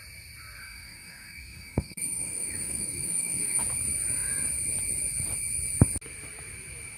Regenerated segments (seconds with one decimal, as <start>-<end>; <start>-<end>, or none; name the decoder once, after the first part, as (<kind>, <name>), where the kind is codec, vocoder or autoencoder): 0.6-3.6 (codec, DAC)